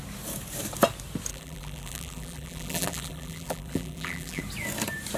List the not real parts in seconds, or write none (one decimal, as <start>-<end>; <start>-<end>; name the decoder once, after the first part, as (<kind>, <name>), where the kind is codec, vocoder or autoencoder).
1.3-4.4 (vocoder, BigVGAN v2)